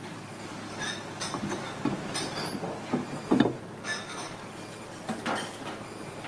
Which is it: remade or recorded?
recorded